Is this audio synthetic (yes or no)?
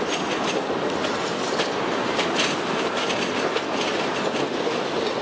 no